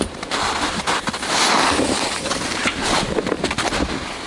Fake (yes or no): yes